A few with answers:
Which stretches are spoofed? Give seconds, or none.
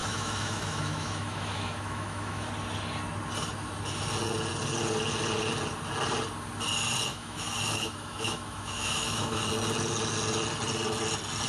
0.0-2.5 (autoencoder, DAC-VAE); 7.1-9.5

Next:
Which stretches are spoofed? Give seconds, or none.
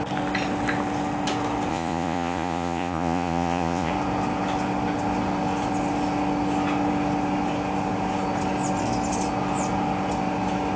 1.7-3.9 (vocoder, Vocos)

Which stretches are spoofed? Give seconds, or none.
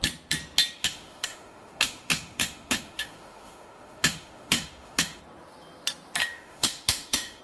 0.8-5.2 (autoencoder, DAC-VAE); 6.2-7.4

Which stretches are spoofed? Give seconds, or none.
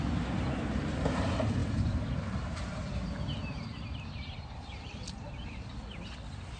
1.6-2.8 (vocoder, BigVGAN v2); 3.7-5.7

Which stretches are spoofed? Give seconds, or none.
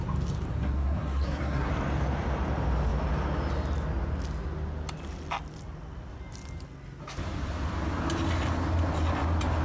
0.5-1.7 (codec, SNAC)